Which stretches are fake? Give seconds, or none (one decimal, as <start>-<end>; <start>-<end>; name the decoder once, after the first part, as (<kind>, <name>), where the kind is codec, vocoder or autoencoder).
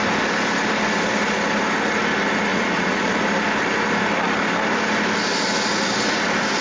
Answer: 2.5-3.1 (vocoder, Vocos)